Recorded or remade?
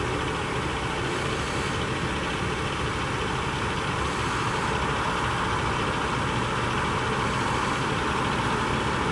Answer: recorded